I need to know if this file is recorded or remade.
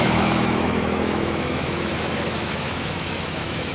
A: remade